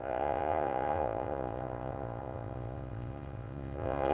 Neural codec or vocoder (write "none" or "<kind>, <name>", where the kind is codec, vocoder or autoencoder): vocoder, Vocos